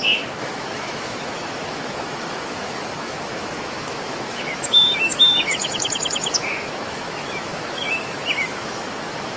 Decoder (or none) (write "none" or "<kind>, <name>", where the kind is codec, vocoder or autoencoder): autoencoder, DAC-VAE